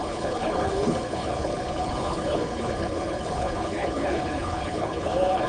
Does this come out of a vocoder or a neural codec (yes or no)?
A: yes